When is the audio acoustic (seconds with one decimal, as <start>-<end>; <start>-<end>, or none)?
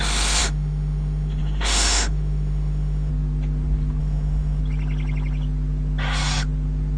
3.1-4.0; 4.6-7.0